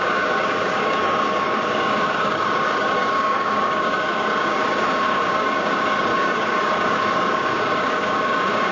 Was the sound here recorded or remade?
remade